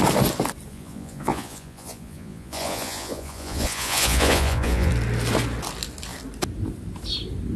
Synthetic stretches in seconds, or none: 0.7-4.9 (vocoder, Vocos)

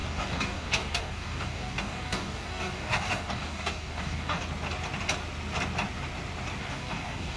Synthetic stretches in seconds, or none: 0.0-4.4 (codec, DAC); 6.6-7.4

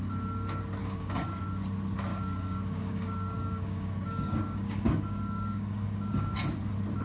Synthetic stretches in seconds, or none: 0.8-1.4 (codec, DAC); 2.1-6.3

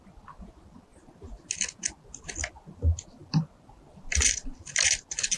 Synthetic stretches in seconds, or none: none

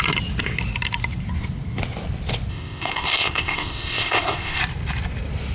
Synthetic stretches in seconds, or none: 2.5-4.6 (codec, ZipCodec)

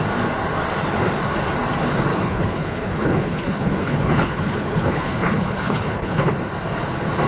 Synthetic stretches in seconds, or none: 2.1-6.3 (codec, HILCodec)